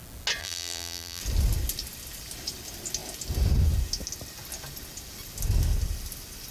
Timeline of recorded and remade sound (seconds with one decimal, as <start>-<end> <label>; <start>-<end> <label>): 0.0-0.4 recorded; 0.4-1.2 remade; 1.2-6.5 recorded